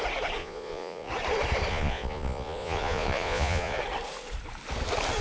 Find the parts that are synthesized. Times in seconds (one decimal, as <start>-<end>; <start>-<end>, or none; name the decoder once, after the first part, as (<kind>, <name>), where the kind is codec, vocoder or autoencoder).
0.4-1.1 (vocoder, Vocos); 1.7-3.8